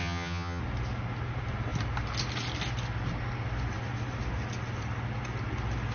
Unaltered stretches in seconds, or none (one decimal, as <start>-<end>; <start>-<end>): 0.6-5.9